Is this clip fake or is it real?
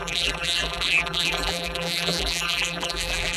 fake